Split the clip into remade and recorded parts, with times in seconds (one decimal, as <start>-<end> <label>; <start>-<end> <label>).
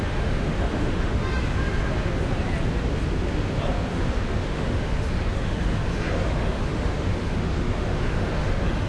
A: 0.0-1.2 remade; 1.2-4.2 recorded; 4.2-8.9 remade